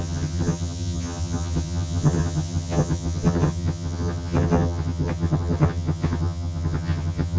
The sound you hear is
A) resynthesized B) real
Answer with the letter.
A